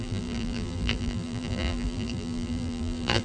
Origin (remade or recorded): remade